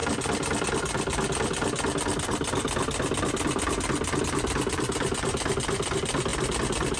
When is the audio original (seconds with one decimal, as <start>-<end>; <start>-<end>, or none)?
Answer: 0.0-7.0